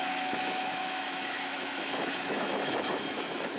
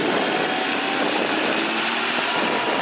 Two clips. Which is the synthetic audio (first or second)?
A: first